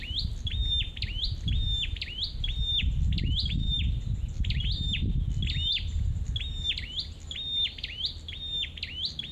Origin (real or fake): real